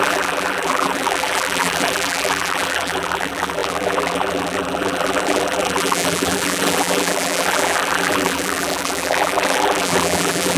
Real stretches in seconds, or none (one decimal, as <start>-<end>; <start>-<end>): none